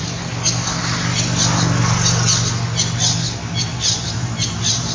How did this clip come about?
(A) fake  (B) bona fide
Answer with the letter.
B